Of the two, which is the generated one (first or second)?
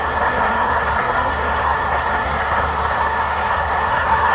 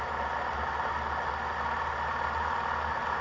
first